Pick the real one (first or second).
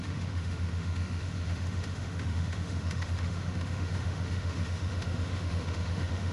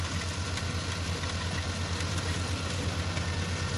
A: second